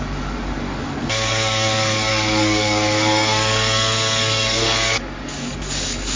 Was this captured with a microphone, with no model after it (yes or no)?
no